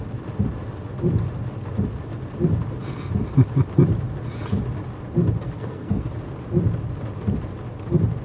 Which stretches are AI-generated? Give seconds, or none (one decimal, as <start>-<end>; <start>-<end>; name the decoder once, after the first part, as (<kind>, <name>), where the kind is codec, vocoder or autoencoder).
5.4-6.1 (codec, SNAC)